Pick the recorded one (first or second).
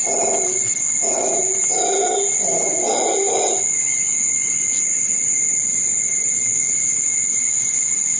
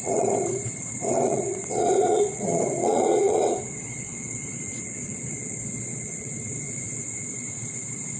first